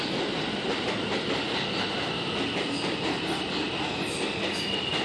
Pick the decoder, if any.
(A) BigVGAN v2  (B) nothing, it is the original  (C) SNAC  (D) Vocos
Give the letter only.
B